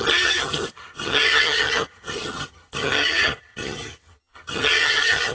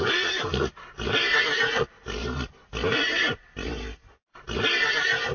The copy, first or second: first